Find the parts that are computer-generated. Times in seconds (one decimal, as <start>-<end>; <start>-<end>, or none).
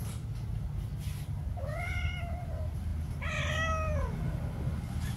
none